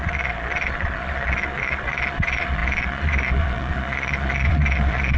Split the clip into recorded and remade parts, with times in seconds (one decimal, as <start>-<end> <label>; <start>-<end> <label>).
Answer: 0.0-5.2 remade